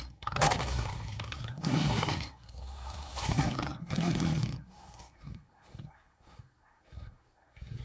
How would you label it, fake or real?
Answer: fake